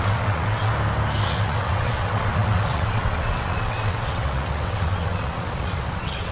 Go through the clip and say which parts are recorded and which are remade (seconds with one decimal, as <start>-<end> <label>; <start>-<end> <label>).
0.0-0.7 remade; 0.7-1.2 recorded; 1.2-6.3 remade